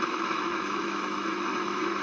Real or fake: fake